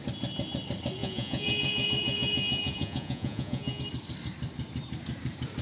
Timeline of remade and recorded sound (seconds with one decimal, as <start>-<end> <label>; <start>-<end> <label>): 0.0-1.0 recorded; 1.0-3.8 remade; 3.8-5.6 recorded